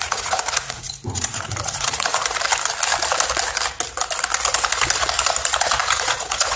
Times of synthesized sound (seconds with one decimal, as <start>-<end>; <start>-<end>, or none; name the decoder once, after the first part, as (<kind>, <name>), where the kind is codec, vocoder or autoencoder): 0.0-2.2 (vocoder, Vocos); 5.8-6.6

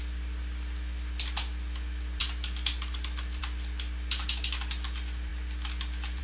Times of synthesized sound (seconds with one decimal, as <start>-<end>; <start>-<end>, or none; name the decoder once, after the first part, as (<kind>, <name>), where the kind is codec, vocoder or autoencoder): none

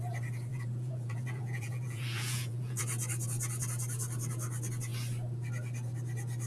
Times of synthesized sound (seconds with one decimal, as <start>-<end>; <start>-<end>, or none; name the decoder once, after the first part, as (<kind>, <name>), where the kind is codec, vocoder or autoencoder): 0.5-2.8 (vocoder, Vocos)